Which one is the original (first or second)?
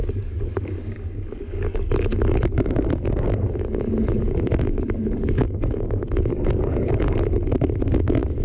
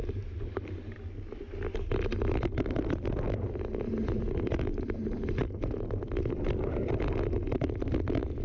second